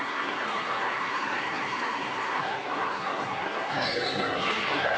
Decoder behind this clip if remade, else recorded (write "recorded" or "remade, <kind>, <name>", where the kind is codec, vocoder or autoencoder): remade, codec, SNAC